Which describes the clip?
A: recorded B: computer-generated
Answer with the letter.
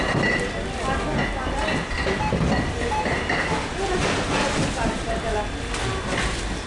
A